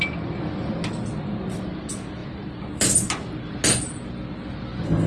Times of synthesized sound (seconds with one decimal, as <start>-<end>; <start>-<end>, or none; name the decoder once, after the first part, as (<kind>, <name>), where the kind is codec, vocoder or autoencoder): 2.2-3.4 (vocoder, BigVGAN v2)